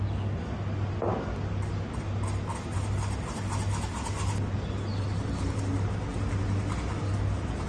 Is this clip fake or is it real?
real